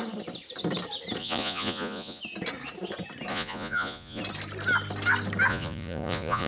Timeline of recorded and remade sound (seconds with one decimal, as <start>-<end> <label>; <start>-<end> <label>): 0.0-1.2 recorded; 1.2-2.2 remade; 2.2-3.3 recorded; 3.3-4.2 remade; 4.2-5.5 recorded; 5.5-6.5 remade